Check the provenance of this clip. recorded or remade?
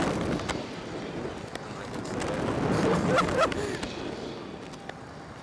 recorded